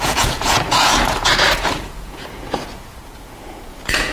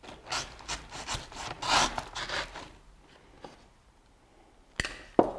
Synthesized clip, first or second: first